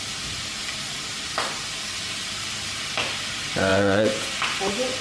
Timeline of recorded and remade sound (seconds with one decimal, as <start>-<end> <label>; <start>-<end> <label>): 0.0-3.7 recorded; 3.7-4.3 remade; 4.3-5.0 recorded